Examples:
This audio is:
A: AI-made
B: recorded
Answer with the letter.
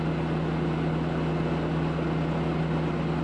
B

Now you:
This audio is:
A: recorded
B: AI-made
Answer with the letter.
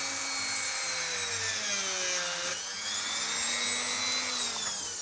A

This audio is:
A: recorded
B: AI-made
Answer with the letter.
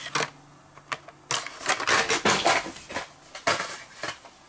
A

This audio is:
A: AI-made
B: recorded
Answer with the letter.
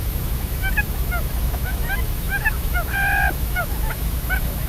A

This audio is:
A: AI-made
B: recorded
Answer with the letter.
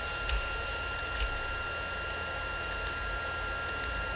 B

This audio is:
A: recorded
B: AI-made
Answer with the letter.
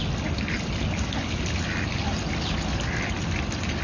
A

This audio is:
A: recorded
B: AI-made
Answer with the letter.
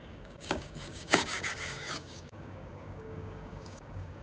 B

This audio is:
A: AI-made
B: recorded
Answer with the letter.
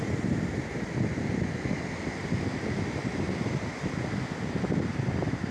B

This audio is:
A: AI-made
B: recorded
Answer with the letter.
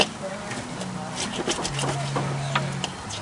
B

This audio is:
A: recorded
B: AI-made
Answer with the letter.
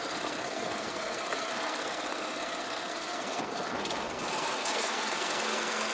B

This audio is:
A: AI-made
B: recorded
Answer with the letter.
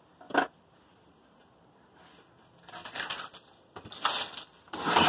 B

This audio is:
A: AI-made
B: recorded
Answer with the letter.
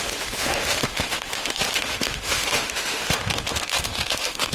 A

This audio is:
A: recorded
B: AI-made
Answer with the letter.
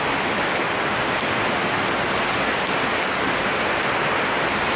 A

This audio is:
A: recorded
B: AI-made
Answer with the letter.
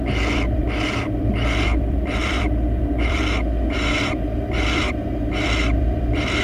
B